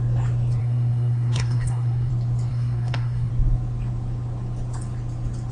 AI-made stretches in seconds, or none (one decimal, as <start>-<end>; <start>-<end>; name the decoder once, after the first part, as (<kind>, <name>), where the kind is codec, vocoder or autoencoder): 0.6-2.1 (codec, SNAC); 2.5-3.3